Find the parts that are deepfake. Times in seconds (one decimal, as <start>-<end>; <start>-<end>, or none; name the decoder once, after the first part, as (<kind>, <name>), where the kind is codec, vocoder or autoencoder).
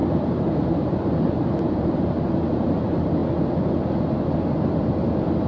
0.0-2.4 (vocoder, BigVGAN v2)